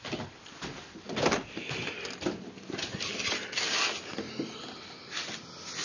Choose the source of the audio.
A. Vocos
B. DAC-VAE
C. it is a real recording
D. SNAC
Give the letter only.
C